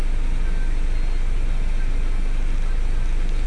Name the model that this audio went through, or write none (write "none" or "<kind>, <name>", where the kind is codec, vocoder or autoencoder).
none